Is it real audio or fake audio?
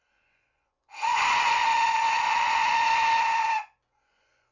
fake